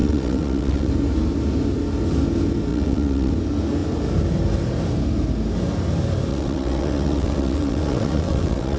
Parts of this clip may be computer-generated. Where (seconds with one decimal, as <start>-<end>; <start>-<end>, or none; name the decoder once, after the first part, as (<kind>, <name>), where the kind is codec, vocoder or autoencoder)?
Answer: 0.0-0.9 (vocoder, WaveNeXt); 2.7-3.3; 6.3-8.8

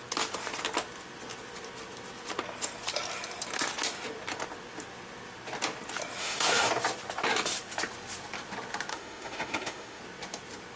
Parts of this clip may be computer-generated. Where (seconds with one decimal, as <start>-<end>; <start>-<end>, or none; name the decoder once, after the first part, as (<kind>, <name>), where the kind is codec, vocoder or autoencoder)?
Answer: 6.2-6.7 (autoencoder, DAC-VAE); 8.9-10.0

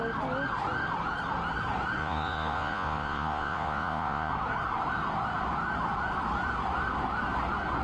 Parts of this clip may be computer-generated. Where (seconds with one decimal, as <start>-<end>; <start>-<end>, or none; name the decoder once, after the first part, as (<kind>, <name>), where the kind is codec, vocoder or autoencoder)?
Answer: 2.0-4.3 (vocoder, Vocos)

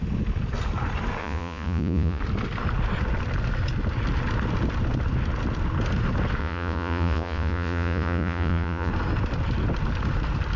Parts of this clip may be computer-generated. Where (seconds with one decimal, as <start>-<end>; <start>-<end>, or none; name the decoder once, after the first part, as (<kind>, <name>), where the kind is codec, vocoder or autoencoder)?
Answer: 1.2-2.2 (vocoder, Vocos); 6.4-8.9

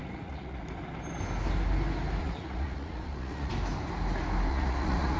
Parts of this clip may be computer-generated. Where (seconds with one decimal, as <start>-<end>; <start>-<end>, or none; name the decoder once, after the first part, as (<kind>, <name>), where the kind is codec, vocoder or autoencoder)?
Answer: 0.0-0.6 (vocoder, Vocos); 2.2-3.5; 4.5-5.2

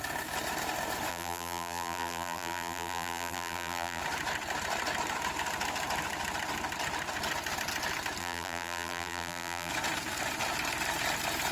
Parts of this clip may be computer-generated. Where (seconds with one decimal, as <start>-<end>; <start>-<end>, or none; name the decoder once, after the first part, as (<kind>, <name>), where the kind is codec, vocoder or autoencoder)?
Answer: 1.1-4.0 (vocoder, BigVGAN v2); 8.2-9.7

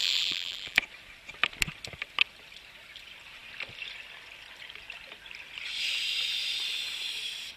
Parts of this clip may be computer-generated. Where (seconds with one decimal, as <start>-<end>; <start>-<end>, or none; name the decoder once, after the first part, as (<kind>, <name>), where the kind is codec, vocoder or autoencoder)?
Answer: 0.0-0.8 (vocoder, BigVGAN v2)